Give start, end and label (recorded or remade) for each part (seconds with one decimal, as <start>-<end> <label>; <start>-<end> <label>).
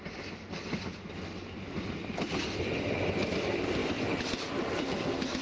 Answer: 0.0-5.4 recorded